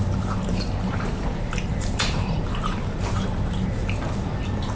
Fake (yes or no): yes